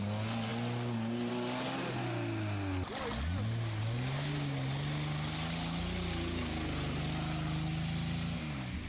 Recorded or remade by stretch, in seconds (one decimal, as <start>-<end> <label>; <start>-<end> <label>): 0.0-8.9 recorded